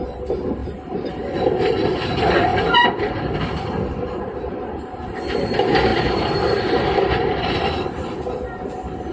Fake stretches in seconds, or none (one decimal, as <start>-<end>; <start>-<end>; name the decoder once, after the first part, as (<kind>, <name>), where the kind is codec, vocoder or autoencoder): 0.6-1.2 (vocoder, BigVGAN v2); 5.9-7.4